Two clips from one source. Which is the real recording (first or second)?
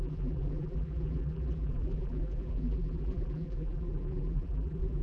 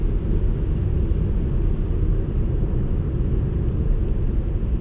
second